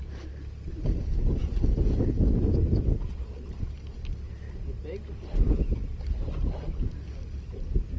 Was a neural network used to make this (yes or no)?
no